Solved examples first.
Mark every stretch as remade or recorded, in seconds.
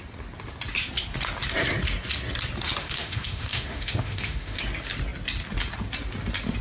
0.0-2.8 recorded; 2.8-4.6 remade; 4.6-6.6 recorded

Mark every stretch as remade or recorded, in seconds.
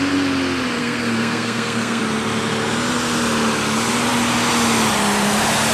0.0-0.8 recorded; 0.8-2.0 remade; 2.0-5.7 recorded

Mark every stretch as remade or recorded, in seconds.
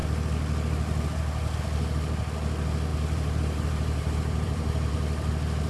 0.0-2.9 recorded; 2.9-4.9 remade; 4.9-5.7 recorded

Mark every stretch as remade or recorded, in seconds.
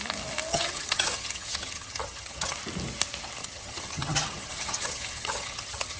0.0-0.5 recorded; 0.5-2.5 remade; 2.5-3.4 recorded; 3.4-6.0 remade